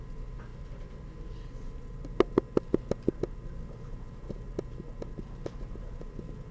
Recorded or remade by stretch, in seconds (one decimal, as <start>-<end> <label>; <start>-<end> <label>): 0.0-6.5 recorded